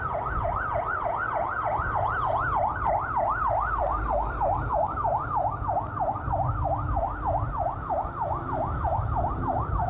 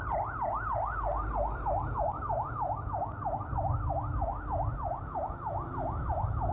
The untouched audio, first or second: second